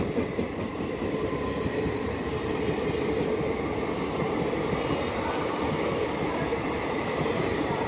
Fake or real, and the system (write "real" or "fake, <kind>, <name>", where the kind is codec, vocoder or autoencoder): fake, vocoder, BigVGAN v2